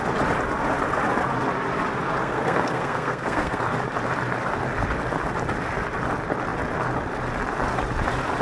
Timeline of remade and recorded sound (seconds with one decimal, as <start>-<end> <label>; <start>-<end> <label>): 0.0-2.2 recorded; 2.2-3.6 remade; 3.6-8.4 recorded